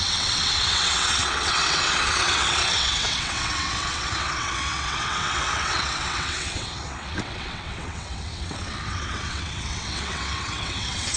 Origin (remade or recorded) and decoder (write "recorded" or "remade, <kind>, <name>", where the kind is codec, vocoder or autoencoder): remade, vocoder, WaveNeXt